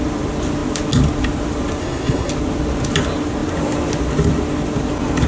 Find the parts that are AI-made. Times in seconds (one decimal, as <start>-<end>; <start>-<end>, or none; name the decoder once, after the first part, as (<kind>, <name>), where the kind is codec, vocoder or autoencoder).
1.8-2.3 (codec, SNAC)